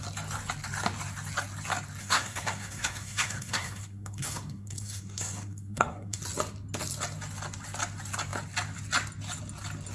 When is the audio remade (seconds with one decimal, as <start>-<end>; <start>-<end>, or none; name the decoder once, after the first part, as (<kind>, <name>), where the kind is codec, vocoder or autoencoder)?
2.0-6.2 (codec, SNAC)